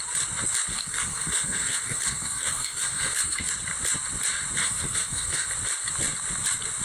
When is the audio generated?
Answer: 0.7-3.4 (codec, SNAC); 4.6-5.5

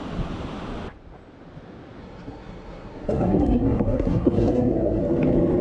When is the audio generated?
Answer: 2.0-5.0 (codec, SNAC)

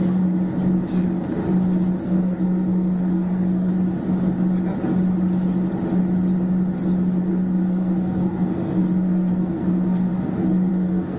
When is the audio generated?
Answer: 2.0-3.7 (codec, SNAC); 7.3-11.2

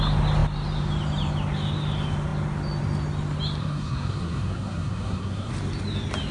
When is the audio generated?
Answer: 3.6-5.5 (codec, SNAC)